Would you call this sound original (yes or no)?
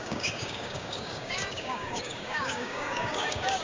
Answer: no